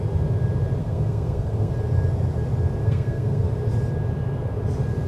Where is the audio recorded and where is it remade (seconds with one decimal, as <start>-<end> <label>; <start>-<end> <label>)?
0.0-0.8 recorded; 0.8-1.7 remade; 1.7-2.8 recorded; 2.8-3.5 remade; 3.5-5.1 recorded